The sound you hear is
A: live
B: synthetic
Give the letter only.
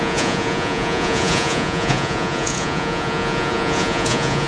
B